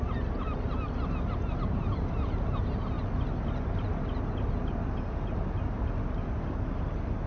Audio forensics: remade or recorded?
recorded